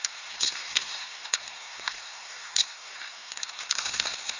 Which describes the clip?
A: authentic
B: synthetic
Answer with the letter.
B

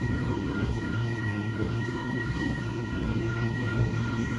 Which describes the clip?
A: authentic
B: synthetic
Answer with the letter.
B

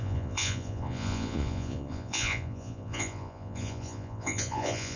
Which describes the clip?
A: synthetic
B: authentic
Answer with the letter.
A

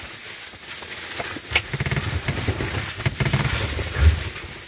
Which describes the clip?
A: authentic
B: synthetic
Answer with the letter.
A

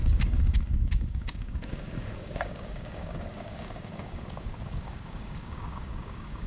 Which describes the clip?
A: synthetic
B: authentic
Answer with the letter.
A